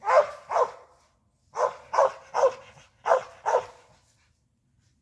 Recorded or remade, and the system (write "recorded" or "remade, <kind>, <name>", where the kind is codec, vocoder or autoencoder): recorded